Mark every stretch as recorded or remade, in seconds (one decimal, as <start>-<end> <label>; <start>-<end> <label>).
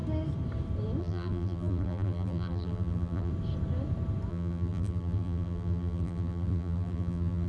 0.0-1.0 recorded; 1.0-3.3 remade; 3.3-4.3 recorded; 4.3-7.5 remade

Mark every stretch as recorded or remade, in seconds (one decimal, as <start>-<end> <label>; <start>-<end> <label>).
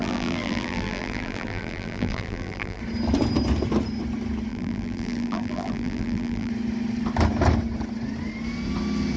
0.0-2.8 remade; 2.8-4.5 recorded; 4.5-6.5 remade; 6.5-9.2 recorded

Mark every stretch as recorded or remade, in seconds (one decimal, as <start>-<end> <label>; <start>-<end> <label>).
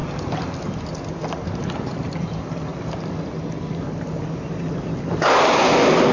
0.0-0.5 recorded; 0.5-2.7 remade; 2.7-3.4 recorded; 3.4-6.1 remade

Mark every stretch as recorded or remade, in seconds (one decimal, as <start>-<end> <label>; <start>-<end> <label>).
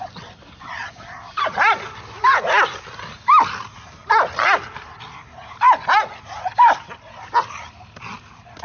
0.0-0.8 recorded; 0.8-1.7 remade; 1.7-8.6 recorded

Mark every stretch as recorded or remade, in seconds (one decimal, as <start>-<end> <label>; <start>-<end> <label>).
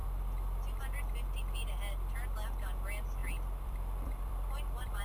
0.0-3.2 recorded; 3.2-5.0 remade